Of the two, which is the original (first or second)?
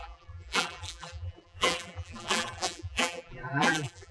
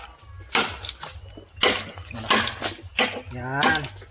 second